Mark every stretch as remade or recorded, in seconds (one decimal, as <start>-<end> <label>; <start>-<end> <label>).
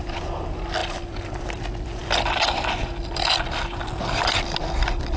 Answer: 0.0-5.2 recorded